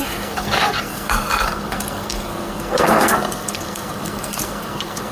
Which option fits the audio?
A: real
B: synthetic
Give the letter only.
B